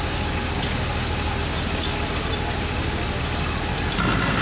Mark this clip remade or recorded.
recorded